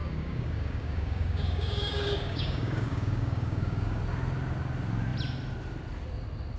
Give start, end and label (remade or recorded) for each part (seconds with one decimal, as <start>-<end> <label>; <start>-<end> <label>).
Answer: 0.0-4.0 remade; 4.0-6.6 recorded